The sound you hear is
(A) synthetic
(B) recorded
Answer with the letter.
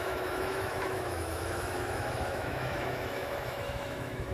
A